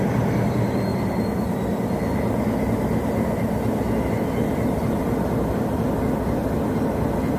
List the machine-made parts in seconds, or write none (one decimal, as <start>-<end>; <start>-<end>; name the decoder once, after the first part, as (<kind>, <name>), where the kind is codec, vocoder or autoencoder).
none